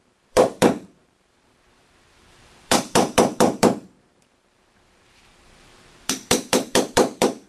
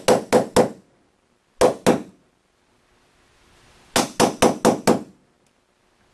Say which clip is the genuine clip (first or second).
second